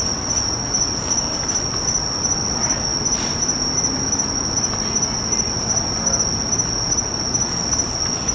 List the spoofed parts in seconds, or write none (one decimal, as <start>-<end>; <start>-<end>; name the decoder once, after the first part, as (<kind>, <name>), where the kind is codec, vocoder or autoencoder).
none